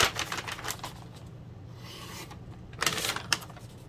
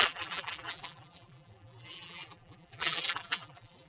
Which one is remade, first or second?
second